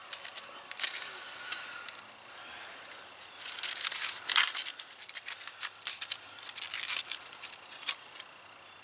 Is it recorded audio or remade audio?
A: remade